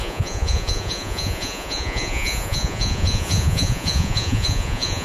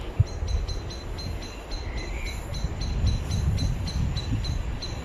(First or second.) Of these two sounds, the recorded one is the second